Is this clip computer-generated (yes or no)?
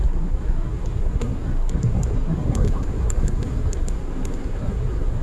yes